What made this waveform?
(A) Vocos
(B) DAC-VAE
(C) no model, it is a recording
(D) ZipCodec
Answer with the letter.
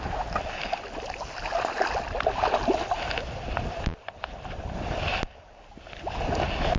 C